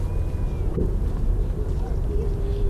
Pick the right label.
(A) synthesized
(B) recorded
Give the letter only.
B